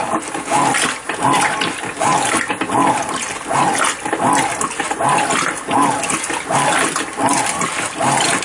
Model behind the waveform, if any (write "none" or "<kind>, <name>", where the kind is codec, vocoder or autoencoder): none